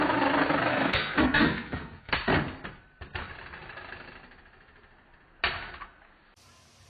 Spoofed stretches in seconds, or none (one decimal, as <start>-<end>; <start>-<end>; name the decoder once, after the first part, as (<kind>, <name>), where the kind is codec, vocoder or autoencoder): 0.7-2.1 (codec, SNAC)